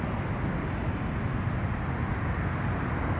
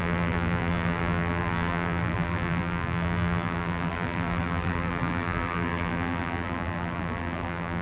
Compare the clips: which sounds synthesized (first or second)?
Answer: second